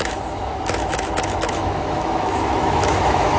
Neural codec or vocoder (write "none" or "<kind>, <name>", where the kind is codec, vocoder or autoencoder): autoencoder, DAC-VAE